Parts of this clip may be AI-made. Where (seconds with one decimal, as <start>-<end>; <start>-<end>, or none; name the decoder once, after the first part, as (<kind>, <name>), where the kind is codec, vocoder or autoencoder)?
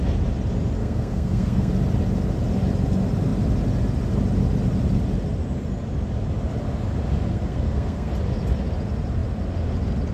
0.8-1.7 (codec, SNAC); 7.3-8.1